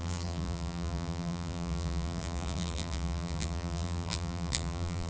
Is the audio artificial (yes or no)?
yes